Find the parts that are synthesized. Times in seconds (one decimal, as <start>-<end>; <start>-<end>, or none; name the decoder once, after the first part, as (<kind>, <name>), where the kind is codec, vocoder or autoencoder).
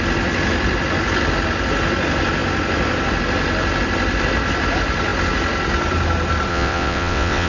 6.5-7.5 (vocoder, WaveNeXt)